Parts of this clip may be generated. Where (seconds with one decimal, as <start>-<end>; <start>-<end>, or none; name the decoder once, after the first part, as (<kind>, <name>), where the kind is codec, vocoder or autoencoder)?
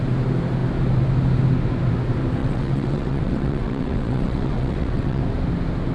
2.4-5.2 (vocoder, WaveNeXt)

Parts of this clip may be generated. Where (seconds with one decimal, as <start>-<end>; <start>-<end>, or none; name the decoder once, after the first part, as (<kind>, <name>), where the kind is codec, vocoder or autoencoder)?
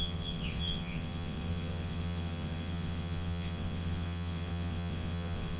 0.0-5.6 (vocoder, WaveNeXt)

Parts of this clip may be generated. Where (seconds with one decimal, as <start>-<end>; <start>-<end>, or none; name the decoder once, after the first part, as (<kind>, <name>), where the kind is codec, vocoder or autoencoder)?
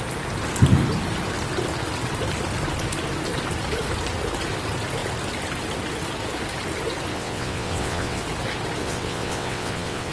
7.1-8.2 (vocoder, WaveNeXt); 8.8-10.1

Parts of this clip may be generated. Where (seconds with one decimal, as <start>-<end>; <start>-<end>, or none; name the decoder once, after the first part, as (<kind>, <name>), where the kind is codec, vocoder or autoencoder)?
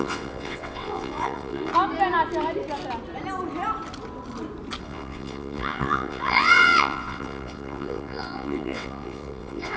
0.0-1.7 (vocoder, WaveNeXt); 4.8-9.8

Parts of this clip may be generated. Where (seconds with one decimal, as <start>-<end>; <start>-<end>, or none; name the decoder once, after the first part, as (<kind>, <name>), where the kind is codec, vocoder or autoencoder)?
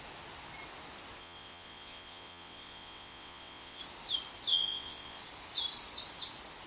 1.2-3.8 (vocoder, WaveNeXt); 4.5-5.2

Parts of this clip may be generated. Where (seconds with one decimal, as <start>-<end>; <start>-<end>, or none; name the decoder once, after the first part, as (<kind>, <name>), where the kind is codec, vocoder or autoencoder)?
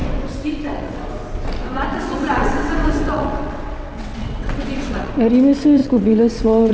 0.0-1.1 (vocoder, WaveNeXt); 1.6-5.1; 5.8-6.7